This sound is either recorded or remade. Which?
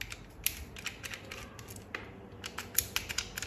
recorded